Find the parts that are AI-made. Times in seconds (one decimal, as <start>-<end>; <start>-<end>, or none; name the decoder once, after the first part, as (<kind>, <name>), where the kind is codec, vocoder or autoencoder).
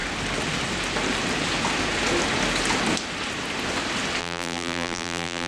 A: 4.2-5.5 (vocoder, BigVGAN v2)